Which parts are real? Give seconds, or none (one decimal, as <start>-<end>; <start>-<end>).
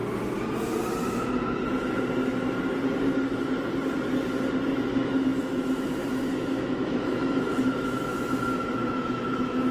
0.0-4.7